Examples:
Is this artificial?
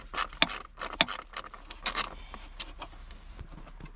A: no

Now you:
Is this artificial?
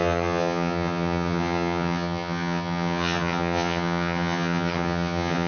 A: yes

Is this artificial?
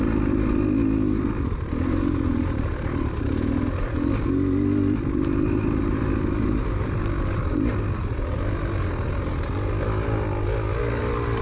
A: no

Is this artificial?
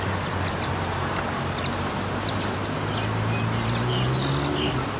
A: no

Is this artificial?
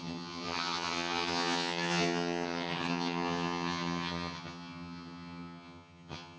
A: yes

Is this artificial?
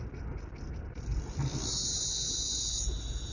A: no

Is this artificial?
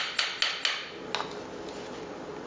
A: no